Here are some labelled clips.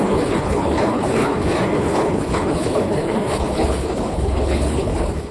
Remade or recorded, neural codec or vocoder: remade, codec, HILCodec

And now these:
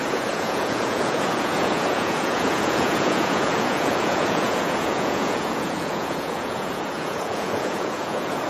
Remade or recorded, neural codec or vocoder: remade, vocoder, Vocos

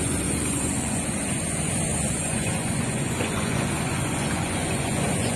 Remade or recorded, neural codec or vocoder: remade, vocoder, Vocos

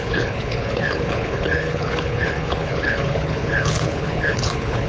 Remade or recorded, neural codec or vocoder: remade, codec, HILCodec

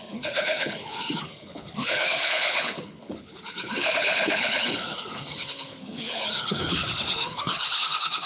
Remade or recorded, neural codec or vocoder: remade, codec, HILCodec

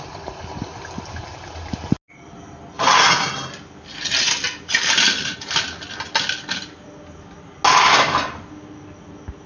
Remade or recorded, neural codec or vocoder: recorded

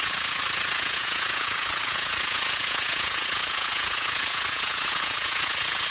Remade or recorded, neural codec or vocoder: remade, vocoder, Vocos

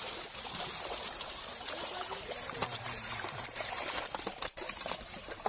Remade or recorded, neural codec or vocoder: remade, vocoder, BigVGAN v2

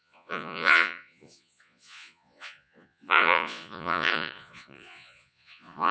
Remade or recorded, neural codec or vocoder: remade, vocoder, Vocos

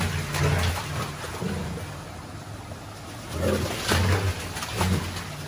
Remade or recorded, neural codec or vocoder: recorded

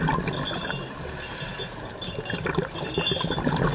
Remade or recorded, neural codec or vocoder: recorded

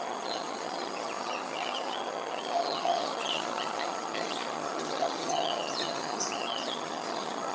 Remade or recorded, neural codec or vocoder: remade, vocoder, HiFi-GAN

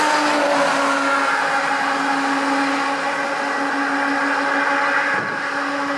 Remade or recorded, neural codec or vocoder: recorded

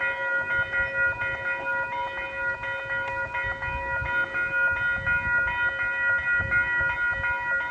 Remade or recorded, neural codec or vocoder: recorded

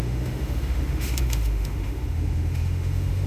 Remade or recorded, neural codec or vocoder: remade, autoencoder, DAC-VAE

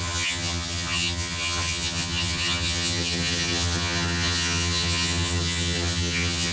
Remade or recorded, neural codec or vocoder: remade, vocoder, HiFi-GAN